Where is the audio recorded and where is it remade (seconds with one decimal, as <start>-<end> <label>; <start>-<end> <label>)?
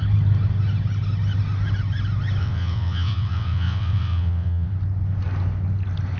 0.0-2.4 recorded; 2.4-4.7 remade; 4.7-6.2 recorded